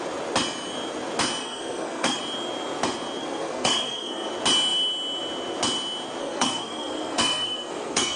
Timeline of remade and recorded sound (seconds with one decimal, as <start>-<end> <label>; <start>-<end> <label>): 0.0-1.4 recorded; 1.4-2.2 remade; 2.2-3.2 recorded; 3.2-4.3 remade; 4.3-6.2 recorded; 6.2-8.2 remade